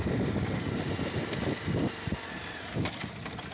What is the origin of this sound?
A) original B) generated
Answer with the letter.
A